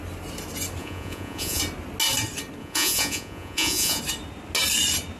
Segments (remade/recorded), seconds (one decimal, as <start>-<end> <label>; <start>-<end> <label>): 0.0-0.8 recorded; 0.8-1.6 remade; 1.6-2.6 recorded; 2.6-4.0 remade; 4.0-5.2 recorded